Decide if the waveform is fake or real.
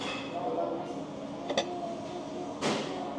real